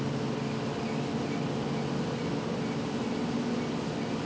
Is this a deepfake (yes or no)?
no